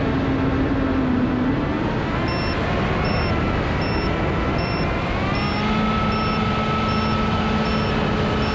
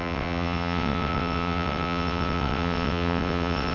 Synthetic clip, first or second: second